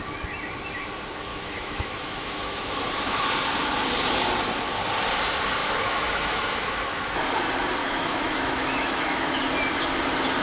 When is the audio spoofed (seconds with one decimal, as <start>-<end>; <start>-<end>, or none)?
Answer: 1.3-3.2; 5.6-7.2; 7.8-9.4